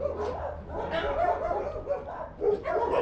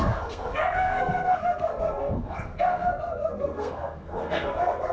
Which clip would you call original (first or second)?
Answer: first